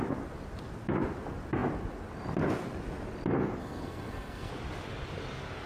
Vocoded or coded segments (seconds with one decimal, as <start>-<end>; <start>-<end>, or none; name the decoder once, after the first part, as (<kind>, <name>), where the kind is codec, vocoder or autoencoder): 3.6-4.5 (codec, SNAC)